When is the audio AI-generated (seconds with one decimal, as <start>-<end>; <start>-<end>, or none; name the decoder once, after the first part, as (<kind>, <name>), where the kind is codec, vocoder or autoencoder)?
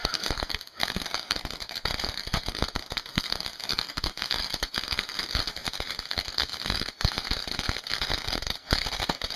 0.0-9.4 (codec, SNAC)